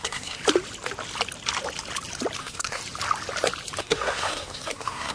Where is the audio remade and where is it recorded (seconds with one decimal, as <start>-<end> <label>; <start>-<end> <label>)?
0.0-0.4 remade; 0.4-2.4 recorded; 2.4-2.8 remade; 2.8-3.8 recorded; 3.8-5.1 remade